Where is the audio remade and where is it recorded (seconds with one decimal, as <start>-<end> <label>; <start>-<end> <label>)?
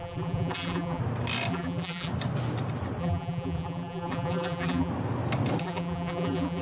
0.0-1.0 remade; 1.0-1.5 recorded; 1.5-2.1 remade; 2.1-3.0 recorded; 3.0-4.9 remade; 4.9-5.6 recorded; 5.6-6.6 remade